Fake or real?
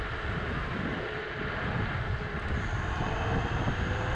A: real